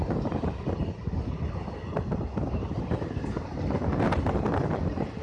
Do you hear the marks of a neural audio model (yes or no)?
no